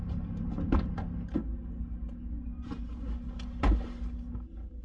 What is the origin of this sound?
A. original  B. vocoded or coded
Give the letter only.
A